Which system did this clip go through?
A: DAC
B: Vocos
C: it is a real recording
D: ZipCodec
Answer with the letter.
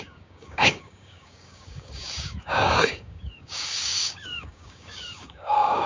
A